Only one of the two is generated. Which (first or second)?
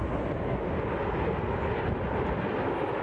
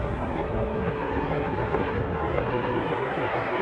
second